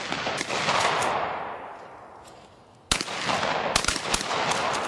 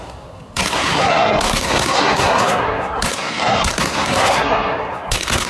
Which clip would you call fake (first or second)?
second